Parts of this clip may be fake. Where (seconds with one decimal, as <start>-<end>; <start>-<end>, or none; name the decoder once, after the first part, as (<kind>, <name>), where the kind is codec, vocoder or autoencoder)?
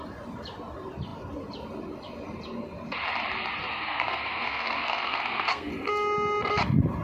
3.6-5.7 (codec, SNAC)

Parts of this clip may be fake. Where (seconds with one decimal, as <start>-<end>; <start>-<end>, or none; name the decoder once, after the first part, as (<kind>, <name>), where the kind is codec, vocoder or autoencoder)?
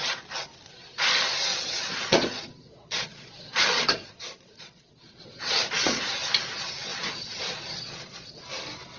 1.5-6.0 (vocoder, Vocos); 6.9-8.4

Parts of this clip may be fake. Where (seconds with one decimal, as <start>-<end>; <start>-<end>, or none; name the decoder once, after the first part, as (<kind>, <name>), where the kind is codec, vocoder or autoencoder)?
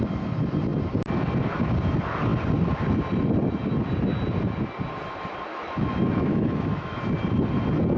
5.5-7.0 (autoencoder, DAC-VAE)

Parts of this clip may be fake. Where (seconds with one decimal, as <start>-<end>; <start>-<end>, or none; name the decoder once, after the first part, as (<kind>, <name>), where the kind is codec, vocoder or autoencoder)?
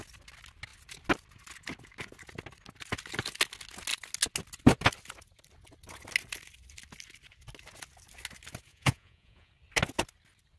8.7-9.5 (vocoder, Vocos)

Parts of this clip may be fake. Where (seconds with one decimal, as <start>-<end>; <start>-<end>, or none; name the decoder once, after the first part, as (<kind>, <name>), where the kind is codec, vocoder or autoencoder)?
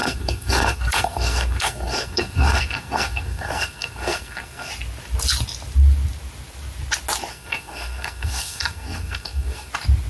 0.0-4.7 (codec, SNAC); 7.3-9.7